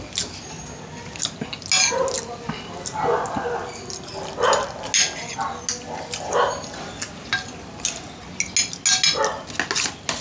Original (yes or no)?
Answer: yes